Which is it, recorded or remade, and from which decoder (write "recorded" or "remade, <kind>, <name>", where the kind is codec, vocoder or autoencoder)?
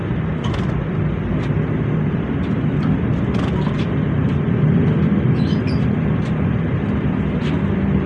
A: remade, vocoder, BigVGAN v2